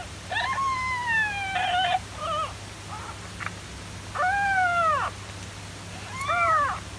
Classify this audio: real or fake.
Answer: real